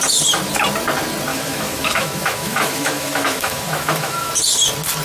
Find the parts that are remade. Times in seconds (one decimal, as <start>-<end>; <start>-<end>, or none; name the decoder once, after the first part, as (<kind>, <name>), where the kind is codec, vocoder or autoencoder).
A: 1.3-4.3 (autoencoder, DAC-VAE)